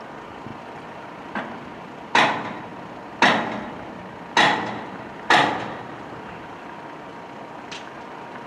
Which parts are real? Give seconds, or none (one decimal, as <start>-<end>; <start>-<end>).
0.0-8.5